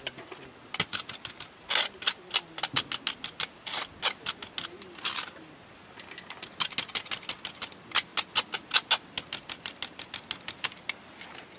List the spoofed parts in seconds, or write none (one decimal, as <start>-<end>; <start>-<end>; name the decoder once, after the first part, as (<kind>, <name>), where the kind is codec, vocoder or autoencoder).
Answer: none